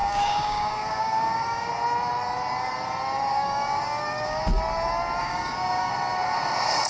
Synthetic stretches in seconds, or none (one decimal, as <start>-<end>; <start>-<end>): 0.0-1.7; 3.3-4.6; 5.2-5.9